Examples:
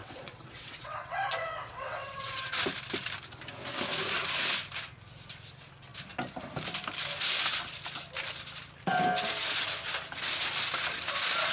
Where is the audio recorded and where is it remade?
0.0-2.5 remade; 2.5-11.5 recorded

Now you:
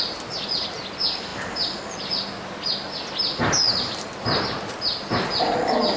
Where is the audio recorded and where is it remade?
0.0-6.0 recorded

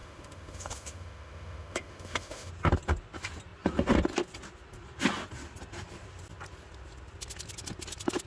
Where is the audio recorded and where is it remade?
0.0-2.5 remade; 2.5-8.3 recorded

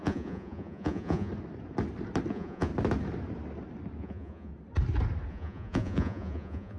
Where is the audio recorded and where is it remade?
0.0-1.3 remade; 1.3-2.3 recorded; 2.3-2.7 remade; 2.7-4.0 recorded; 4.0-4.5 remade; 4.5-5.3 recorded; 5.3-6.8 remade

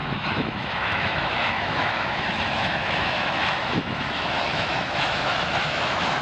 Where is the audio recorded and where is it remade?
0.0-6.2 remade

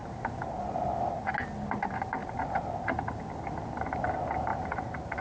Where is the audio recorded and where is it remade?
0.0-2.2 recorded; 2.2-2.7 remade; 2.7-4.5 recorded; 4.5-5.2 remade

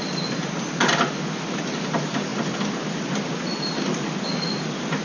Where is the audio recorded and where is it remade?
0.0-5.0 recorded

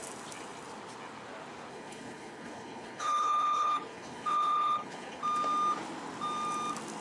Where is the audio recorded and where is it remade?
0.0-1.7 recorded; 1.7-5.2 remade; 5.2-7.0 recorded